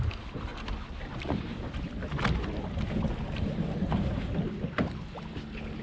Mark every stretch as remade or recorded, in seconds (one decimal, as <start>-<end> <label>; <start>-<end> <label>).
0.0-0.5 recorded; 0.5-1.8 remade; 1.8-5.8 recorded